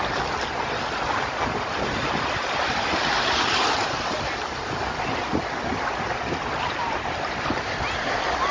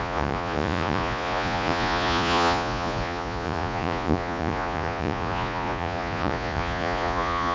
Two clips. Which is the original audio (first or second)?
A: first